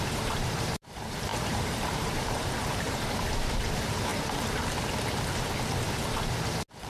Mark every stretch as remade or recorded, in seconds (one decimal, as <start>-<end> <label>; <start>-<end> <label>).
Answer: 0.0-4.1 remade; 4.1-6.9 recorded